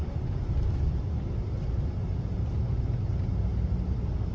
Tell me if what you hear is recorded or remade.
recorded